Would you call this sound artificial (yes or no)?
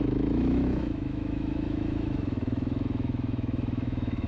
yes